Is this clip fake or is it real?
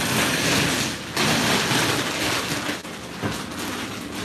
real